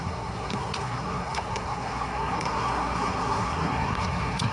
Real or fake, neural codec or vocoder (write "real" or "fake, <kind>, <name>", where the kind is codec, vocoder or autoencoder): fake, codec, SNAC